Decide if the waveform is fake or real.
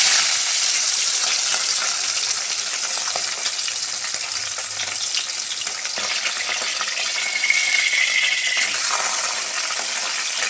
real